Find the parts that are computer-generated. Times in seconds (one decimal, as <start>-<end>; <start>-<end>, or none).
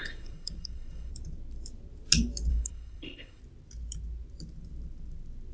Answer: 0.0-1.1; 2.5-3.4